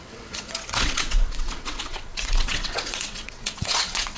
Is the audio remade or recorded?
remade